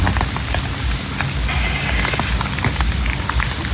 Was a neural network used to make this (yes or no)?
no